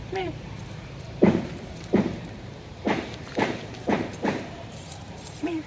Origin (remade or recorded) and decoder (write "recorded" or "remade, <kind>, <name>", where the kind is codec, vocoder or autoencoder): remade, vocoder, BigVGAN v2